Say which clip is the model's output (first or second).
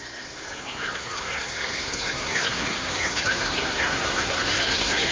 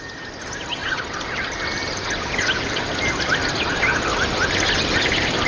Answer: first